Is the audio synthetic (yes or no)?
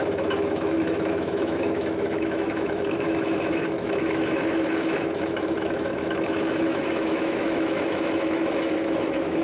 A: yes